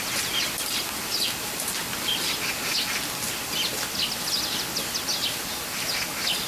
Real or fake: real